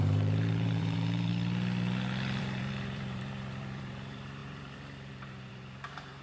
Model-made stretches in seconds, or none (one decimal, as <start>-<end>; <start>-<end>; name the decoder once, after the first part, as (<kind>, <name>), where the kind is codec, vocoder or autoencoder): 0.0-1.3 (vocoder, BigVGAN v2); 2.4-6.2